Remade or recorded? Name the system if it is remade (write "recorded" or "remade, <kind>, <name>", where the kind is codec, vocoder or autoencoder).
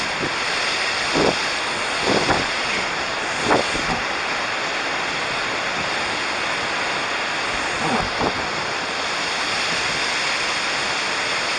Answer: recorded